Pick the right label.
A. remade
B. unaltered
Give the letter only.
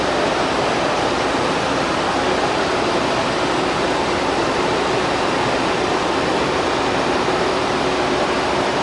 A